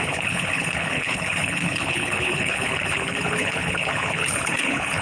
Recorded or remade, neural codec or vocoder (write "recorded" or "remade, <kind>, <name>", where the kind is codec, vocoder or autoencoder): remade, codec, HILCodec